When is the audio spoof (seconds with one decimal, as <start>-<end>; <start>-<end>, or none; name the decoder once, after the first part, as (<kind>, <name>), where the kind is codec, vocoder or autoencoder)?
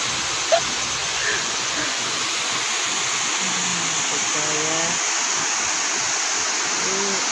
1.0-3.3 (vocoder, Vocos)